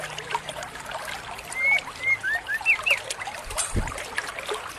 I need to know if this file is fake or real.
real